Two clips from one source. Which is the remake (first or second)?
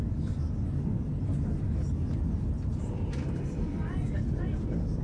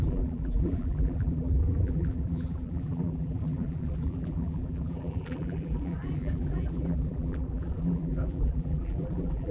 second